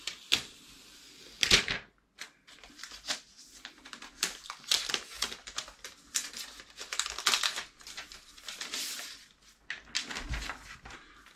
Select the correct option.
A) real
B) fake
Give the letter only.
A